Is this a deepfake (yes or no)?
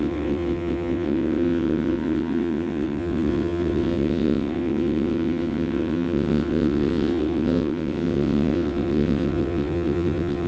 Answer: yes